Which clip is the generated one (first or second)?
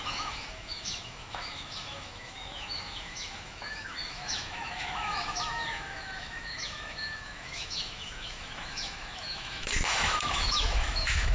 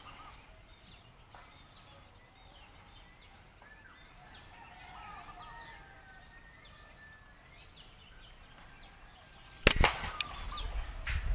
first